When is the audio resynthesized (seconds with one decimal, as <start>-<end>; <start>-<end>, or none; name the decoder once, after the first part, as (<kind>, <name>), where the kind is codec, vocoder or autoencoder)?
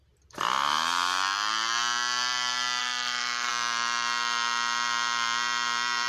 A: 2.8-3.5 (autoencoder, DAC-VAE)